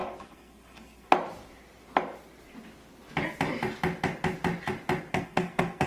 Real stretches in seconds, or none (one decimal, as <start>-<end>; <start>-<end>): 1.1-5.1